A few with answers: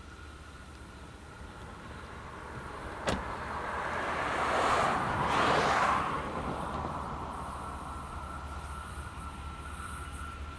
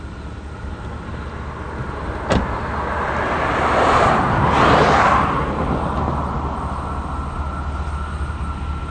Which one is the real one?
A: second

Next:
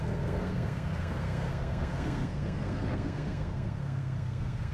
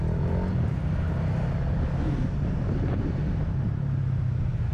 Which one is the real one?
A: second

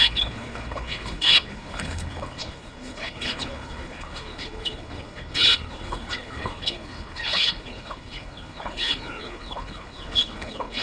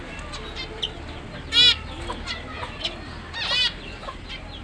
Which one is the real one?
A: second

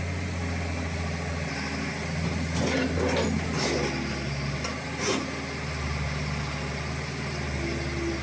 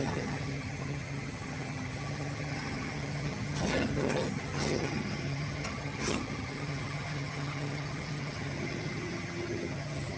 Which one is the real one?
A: first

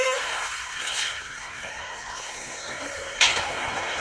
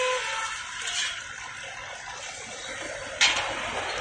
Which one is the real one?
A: second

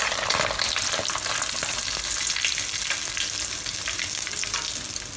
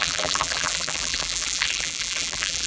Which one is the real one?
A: first